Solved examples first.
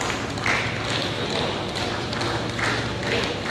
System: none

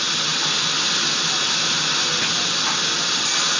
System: none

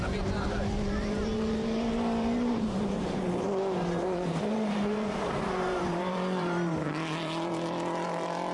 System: vocoder, BigVGAN v2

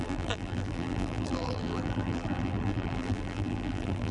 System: vocoder, BigVGAN v2